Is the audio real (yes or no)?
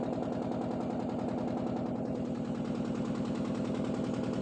yes